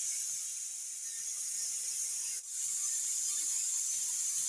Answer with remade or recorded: recorded